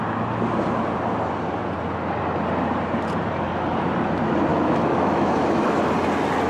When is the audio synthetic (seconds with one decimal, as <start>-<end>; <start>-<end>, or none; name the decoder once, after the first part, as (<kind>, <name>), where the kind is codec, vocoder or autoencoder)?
4.5-5.8 (autoencoder, DAC-VAE)